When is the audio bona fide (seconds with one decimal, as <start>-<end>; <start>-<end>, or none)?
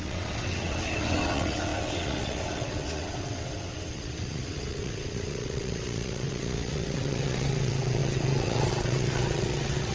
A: none